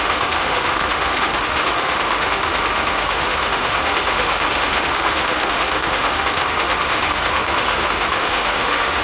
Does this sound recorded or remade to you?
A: remade